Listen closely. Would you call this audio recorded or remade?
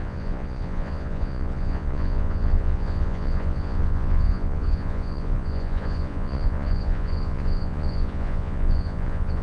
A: remade